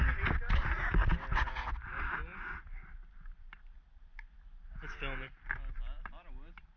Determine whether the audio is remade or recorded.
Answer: recorded